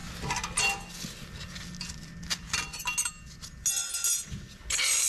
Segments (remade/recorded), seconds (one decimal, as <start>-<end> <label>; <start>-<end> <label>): 0.0-5.1 recorded